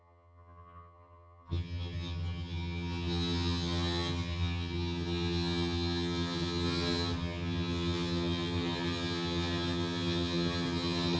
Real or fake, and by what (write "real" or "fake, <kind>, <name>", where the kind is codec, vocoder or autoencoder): fake, vocoder, HiFi-GAN